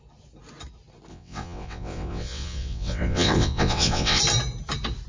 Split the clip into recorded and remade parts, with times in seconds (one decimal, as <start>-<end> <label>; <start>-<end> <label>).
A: 0.0-1.1 recorded; 1.1-4.2 remade; 4.2-5.1 recorded